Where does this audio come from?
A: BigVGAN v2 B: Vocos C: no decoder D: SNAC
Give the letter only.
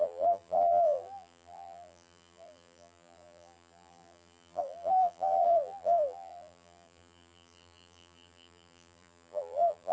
A